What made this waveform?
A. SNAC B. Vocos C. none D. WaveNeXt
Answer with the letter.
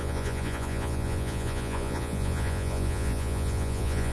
B